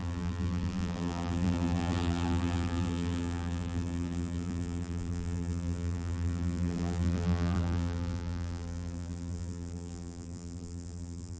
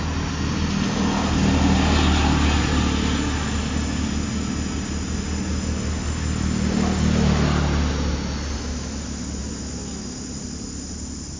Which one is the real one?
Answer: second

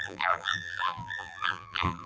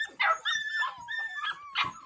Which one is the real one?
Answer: second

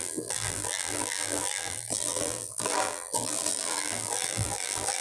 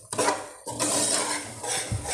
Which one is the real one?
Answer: second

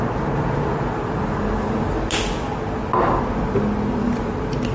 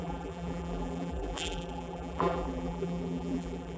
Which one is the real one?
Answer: first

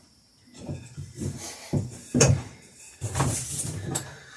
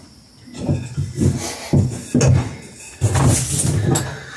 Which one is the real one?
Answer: second